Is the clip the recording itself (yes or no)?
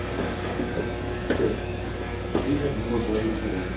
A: no